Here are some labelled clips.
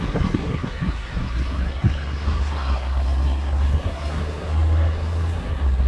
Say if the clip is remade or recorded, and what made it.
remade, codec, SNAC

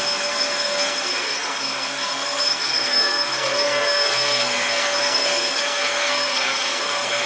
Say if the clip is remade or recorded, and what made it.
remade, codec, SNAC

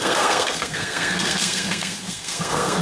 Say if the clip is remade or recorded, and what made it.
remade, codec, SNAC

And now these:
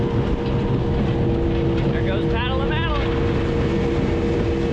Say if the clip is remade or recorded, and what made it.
recorded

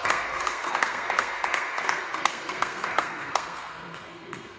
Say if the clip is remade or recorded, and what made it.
remade, codec, SNAC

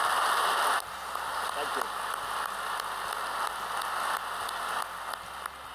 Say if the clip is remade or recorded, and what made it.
recorded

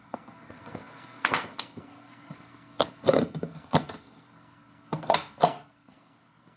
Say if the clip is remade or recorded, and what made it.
remade, codec, SNAC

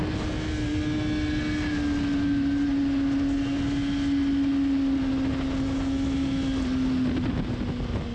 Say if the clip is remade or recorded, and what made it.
recorded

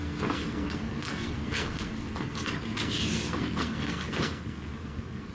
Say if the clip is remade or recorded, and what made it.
remade, codec, SNAC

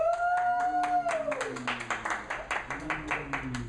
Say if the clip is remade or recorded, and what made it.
recorded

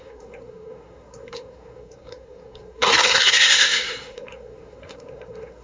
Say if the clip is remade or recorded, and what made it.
remade, codec, SNAC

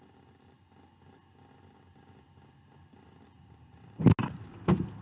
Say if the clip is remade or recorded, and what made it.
recorded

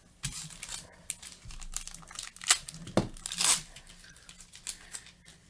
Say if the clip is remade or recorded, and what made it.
recorded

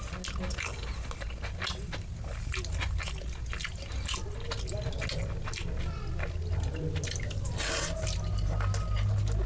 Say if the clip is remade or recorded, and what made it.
recorded